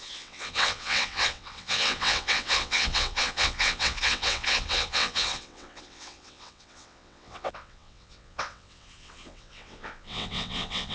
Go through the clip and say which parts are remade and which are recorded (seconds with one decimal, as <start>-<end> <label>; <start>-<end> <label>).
0.0-10.9 remade